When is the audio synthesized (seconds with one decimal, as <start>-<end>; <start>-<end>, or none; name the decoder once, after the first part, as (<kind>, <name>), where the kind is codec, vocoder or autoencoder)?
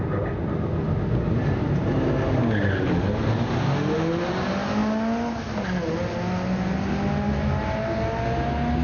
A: none